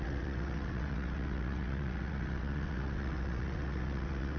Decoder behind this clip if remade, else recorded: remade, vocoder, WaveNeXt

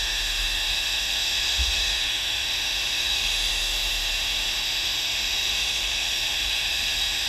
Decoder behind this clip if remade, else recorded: remade, autoencoder, DAC-VAE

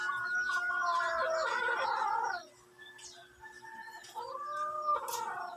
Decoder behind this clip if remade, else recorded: recorded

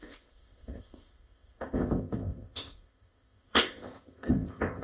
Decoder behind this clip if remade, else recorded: remade, codec, ZipCodec